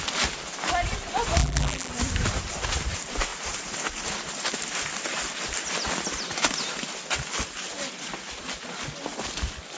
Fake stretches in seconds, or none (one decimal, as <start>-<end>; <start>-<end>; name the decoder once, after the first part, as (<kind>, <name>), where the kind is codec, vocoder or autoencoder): 1.4-1.9 (vocoder, BigVGAN v2)

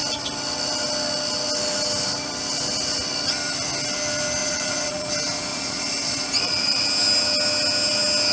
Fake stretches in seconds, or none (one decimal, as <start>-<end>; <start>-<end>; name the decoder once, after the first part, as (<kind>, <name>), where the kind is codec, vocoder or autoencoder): 4.4-5.1 (vocoder, Vocos); 5.5-6.8

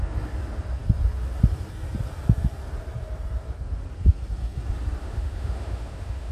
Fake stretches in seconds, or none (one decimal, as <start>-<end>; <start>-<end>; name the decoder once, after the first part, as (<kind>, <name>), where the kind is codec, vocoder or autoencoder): 5.0-6.3 (autoencoder, DAC-VAE)

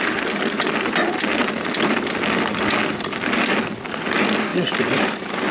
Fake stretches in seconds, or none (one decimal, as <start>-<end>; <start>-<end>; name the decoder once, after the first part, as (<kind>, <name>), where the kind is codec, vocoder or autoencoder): 1.4-2.1 (vocoder, BigVGAN v2); 4.5-5.1